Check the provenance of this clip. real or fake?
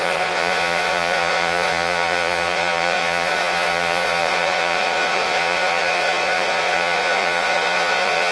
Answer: fake